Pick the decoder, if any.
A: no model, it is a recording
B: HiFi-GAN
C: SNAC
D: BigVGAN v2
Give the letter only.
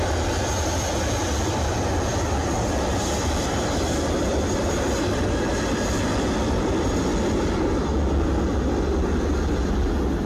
A